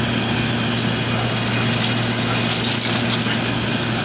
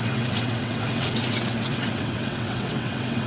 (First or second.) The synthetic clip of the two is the second